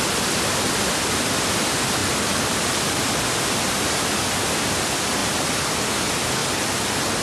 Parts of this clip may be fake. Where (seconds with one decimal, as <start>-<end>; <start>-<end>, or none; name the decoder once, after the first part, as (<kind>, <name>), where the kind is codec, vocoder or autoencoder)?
0.0-6.4 (vocoder, BigVGAN v2)